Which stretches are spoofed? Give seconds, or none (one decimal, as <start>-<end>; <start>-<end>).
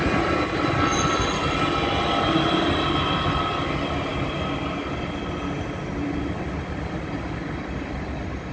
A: none